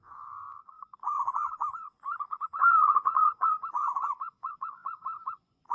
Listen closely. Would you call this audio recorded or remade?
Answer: remade